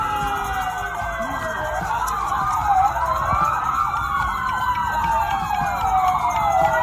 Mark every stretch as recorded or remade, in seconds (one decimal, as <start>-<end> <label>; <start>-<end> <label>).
0.0-6.8 recorded